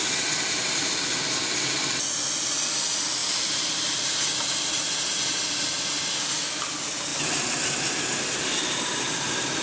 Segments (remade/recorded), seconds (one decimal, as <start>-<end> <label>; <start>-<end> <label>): 0.0-3.2 recorded; 3.2-4.6 remade; 4.6-9.6 recorded